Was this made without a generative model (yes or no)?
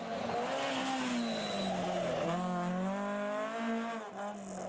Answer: yes